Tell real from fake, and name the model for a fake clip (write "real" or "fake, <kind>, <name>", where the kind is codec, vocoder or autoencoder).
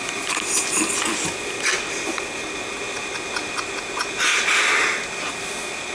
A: real